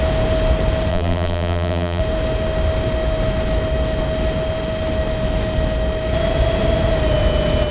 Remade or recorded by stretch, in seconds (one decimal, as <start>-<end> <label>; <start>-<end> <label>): 0.0-0.9 recorded; 0.9-2.0 remade; 2.0-7.7 recorded

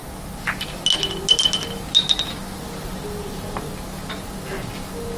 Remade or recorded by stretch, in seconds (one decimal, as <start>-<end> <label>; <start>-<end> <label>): 0.0-5.2 recorded